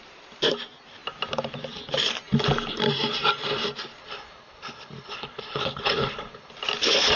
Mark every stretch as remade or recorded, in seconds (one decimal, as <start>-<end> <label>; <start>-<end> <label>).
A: 0.0-4.0 recorded; 4.0-6.5 remade; 6.5-7.2 recorded